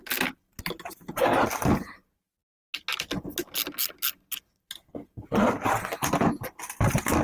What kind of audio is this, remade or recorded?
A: recorded